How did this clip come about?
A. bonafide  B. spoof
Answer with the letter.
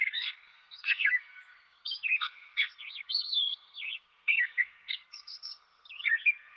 B